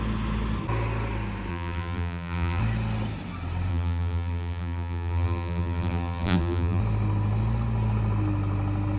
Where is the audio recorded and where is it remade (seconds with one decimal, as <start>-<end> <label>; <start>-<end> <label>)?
0.0-1.5 recorded; 1.5-2.6 remade; 2.6-3.7 recorded; 3.7-6.8 remade; 6.8-9.0 recorded